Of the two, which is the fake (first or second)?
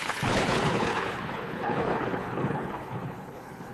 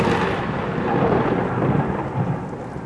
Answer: first